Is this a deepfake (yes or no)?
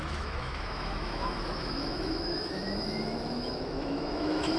yes